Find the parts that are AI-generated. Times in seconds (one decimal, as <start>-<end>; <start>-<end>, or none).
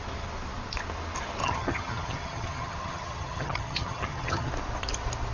1.4-4.5